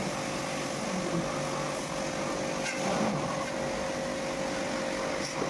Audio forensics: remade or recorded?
recorded